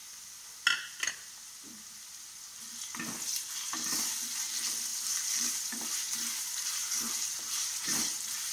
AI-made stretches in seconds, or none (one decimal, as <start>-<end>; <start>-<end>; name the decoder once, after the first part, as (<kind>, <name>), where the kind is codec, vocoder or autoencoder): 4.9-8.5 (vocoder, BigVGAN v2)